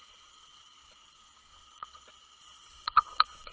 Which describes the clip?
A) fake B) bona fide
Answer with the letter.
A